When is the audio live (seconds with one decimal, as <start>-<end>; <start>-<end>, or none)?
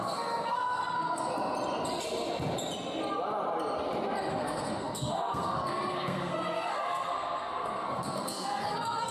1.3-4.3